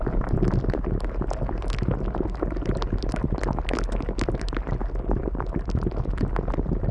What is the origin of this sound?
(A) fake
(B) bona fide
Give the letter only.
B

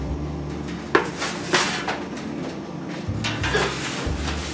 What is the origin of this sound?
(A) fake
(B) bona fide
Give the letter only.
B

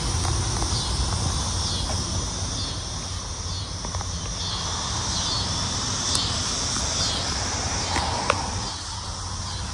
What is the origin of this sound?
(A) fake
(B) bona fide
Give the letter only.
B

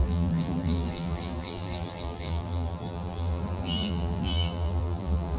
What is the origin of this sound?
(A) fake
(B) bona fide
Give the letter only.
A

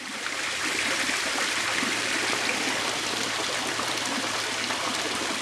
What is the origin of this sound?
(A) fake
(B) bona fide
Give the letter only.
A